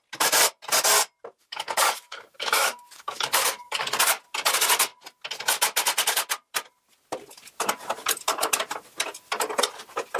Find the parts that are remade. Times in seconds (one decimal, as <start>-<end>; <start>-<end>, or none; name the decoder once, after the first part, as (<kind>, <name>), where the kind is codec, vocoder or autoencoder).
1.4-4.0 (codec, DAC)